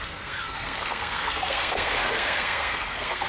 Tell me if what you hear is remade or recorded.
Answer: remade